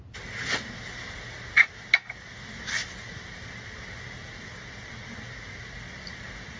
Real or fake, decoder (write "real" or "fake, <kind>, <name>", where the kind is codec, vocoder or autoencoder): real